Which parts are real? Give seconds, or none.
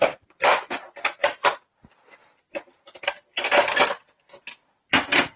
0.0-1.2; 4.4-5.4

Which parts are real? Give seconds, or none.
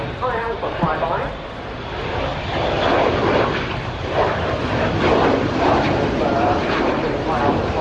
0.9-1.5; 2.3-6.6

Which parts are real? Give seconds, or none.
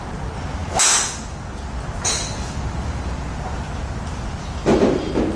0.0-5.4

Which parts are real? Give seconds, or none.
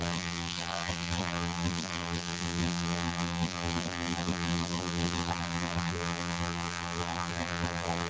none